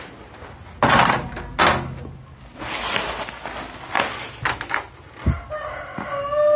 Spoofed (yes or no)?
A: no